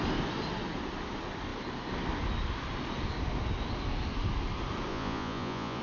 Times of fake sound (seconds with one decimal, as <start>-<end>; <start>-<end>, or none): 4.9-5.8